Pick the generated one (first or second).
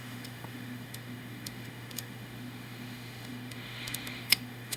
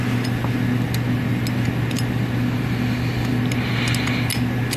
first